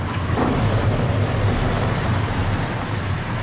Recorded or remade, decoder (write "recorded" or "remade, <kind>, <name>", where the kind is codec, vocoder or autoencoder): remade, vocoder, BigVGAN v2